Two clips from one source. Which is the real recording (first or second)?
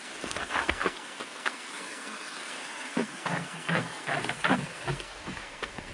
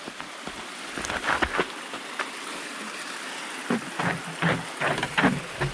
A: second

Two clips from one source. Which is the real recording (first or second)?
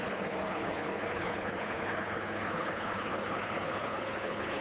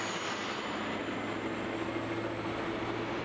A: second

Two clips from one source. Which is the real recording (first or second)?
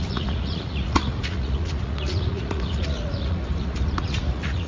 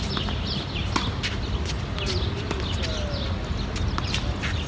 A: second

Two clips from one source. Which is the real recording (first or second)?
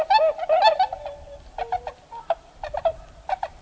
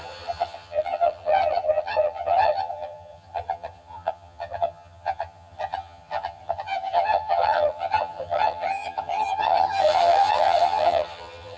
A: first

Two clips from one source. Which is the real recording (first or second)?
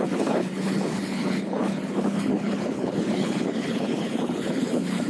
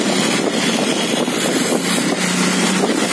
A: second